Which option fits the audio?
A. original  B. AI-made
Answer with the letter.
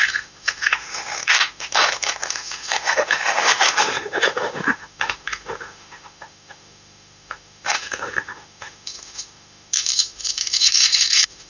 B